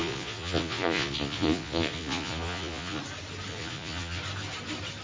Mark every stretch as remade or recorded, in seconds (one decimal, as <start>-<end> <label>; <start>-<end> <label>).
0.0-3.0 remade; 3.0-3.5 recorded; 3.5-4.2 remade; 4.2-5.0 recorded